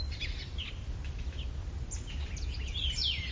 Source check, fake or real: real